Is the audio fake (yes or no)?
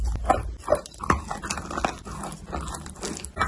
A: no